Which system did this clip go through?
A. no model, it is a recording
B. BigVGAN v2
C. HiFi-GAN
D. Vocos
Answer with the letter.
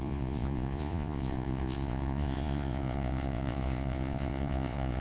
D